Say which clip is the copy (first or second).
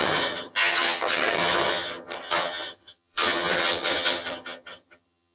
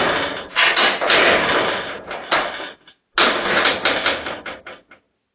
first